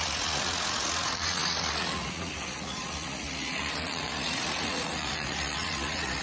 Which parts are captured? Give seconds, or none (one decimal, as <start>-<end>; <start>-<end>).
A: none